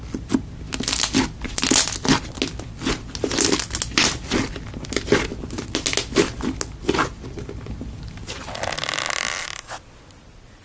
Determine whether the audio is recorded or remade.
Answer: recorded